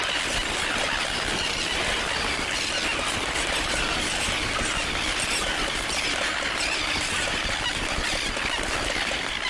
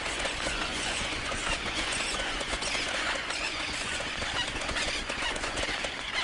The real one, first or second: first